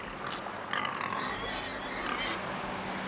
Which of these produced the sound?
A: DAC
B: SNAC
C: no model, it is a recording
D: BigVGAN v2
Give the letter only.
C